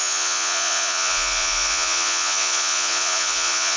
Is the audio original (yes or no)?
no